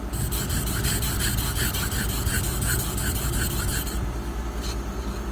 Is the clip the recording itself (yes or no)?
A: yes